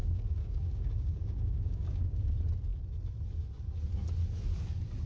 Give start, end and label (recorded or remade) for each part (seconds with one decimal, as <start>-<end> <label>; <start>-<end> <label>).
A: 0.0-2.2 remade; 2.2-5.1 recorded